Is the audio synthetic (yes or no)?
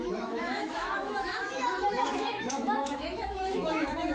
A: yes